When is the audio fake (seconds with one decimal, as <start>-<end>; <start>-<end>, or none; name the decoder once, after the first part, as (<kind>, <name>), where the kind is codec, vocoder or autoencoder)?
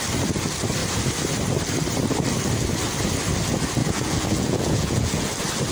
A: 3.8-5.3 (vocoder, Vocos)